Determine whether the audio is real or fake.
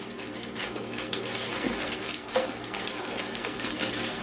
fake